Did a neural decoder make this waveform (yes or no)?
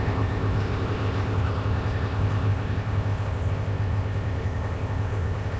yes